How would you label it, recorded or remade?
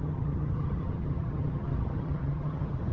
remade